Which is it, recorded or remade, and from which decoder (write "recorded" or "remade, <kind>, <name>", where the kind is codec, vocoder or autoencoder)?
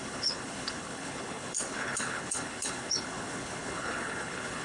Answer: remade, codec, HILCodec